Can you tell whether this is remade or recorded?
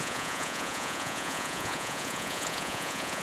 remade